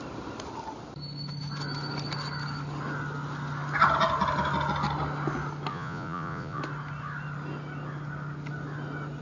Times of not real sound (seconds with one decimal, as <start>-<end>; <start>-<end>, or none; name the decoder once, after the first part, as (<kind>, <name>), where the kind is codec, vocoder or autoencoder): 5.7-6.6 (vocoder, Vocos)